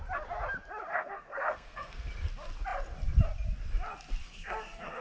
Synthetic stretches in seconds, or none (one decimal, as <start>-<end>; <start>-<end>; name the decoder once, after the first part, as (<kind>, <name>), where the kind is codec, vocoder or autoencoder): 0.9-2.0 (codec, SNAC); 4.2-5.0